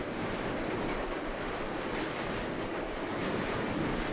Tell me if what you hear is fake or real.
fake